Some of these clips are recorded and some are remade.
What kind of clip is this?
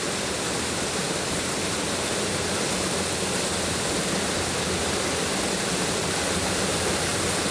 recorded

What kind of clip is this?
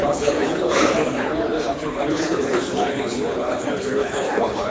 remade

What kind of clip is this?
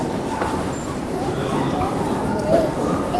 remade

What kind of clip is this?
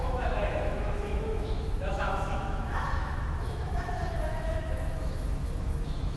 remade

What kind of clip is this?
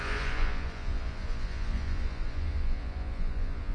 remade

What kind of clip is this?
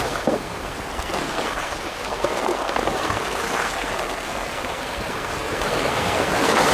remade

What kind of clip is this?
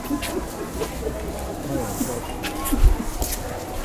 recorded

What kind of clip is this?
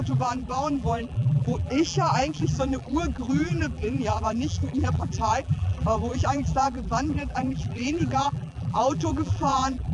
remade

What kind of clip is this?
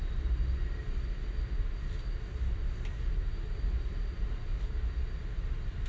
recorded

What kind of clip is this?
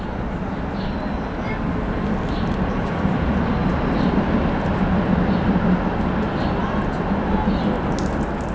recorded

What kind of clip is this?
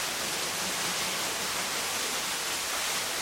recorded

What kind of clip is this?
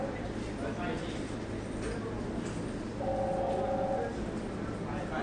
recorded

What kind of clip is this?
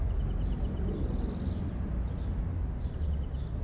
recorded